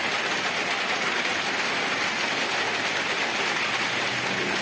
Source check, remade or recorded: recorded